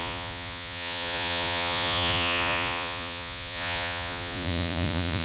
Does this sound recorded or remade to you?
remade